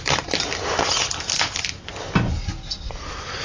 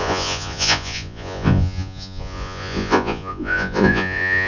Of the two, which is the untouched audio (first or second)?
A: first